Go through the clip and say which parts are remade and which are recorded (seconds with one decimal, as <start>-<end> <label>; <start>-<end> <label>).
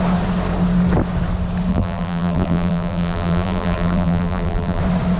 0.0-1.7 recorded; 1.7-4.8 remade; 4.8-5.2 recorded